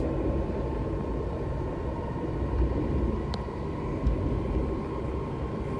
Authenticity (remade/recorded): recorded